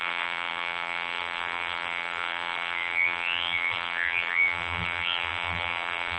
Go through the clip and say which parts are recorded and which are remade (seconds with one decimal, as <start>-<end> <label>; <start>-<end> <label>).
0.0-6.2 remade